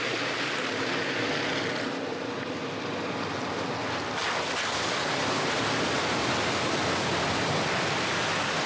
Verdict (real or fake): real